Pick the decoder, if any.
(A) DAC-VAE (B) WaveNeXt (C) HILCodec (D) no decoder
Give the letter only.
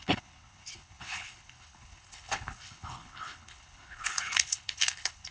C